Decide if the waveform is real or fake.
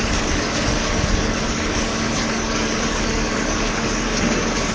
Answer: fake